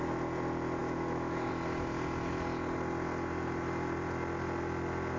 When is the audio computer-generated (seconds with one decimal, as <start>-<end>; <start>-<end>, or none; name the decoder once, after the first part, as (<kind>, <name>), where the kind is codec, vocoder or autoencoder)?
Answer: 0.8-1.5 (autoencoder, DAC-VAE)